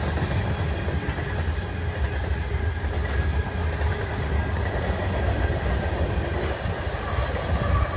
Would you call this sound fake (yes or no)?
no